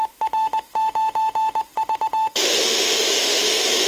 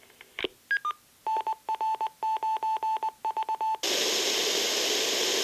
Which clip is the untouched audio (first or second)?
second